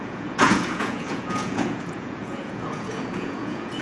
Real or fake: fake